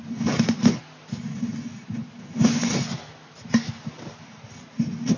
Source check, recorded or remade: recorded